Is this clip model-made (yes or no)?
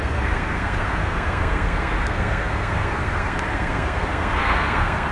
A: yes